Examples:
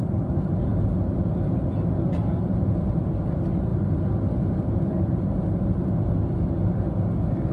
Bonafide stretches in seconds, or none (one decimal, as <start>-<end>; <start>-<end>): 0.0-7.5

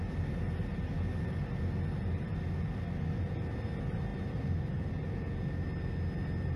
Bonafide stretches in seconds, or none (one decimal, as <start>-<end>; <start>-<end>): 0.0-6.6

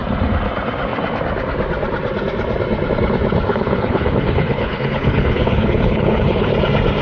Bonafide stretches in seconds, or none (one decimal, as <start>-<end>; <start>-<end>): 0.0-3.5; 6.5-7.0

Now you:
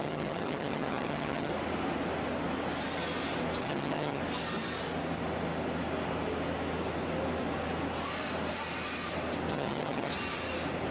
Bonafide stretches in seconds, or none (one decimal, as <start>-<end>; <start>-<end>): 1.5-3.6; 4.2-9.5; 10.1-10.9